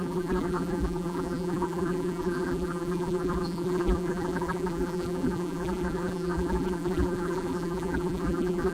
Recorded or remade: remade